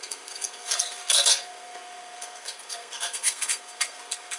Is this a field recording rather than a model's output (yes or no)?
no